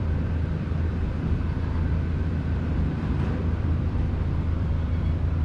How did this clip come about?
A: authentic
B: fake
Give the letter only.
B